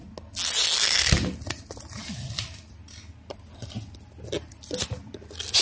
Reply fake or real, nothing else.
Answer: real